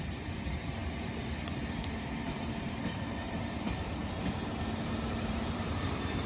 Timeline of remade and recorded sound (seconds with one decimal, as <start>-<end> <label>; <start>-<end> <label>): 0.0-0.8 remade; 0.8-2.0 recorded; 2.0-4.0 remade; 4.0-4.6 recorded; 4.6-6.3 remade